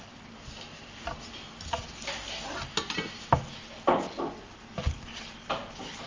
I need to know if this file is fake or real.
real